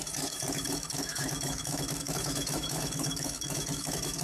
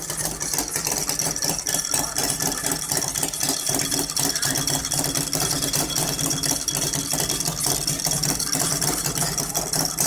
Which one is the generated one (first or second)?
first